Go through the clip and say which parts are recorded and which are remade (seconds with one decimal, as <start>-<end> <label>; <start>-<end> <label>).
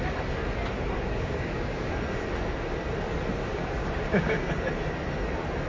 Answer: 0.0-1.1 recorded; 1.1-1.9 remade; 1.9-3.4 recorded; 3.4-4.5 remade; 4.5-5.7 recorded